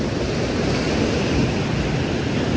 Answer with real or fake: real